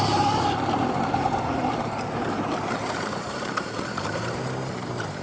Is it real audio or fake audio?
fake